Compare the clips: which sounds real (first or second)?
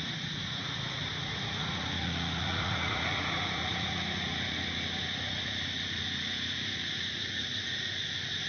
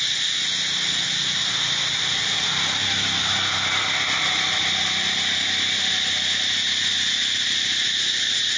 second